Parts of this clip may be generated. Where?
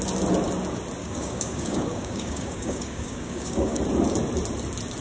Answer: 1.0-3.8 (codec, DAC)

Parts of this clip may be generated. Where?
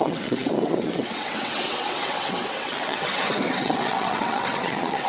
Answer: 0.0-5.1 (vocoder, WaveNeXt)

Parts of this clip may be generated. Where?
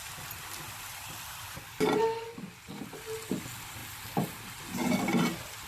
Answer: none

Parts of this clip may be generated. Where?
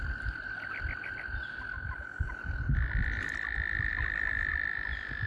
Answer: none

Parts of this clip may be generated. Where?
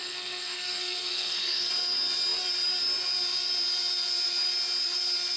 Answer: 0.0-1.7 (codec, SNAC)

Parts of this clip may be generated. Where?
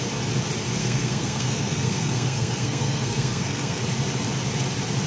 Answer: 0.8-3.8 (codec, SNAC)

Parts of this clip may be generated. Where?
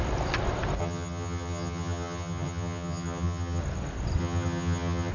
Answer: 0.8-3.6 (vocoder, HiFi-GAN); 4.2-5.1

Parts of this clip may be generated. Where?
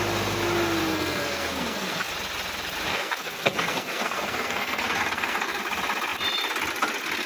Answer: 0.8-2.1 (codec, SNAC); 2.9-5.6